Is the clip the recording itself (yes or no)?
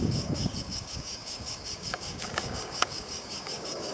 no